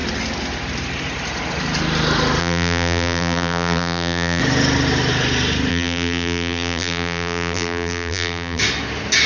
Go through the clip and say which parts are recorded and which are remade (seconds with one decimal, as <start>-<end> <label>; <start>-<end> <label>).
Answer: 0.0-2.4 recorded; 2.4-4.4 remade; 4.4-5.7 recorded; 5.7-8.6 remade; 8.6-9.3 recorded